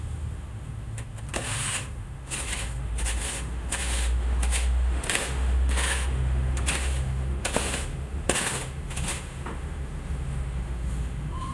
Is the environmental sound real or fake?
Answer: fake